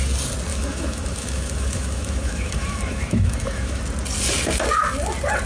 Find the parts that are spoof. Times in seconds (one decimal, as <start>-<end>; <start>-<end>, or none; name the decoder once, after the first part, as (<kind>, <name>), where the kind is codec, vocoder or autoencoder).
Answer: 0.5-3.8 (autoencoder, DAC-VAE)